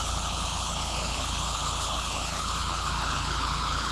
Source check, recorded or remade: remade